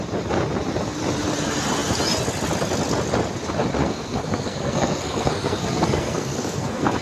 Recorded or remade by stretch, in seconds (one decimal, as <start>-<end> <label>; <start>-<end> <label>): 0.0-3.8 recorded; 3.8-7.0 remade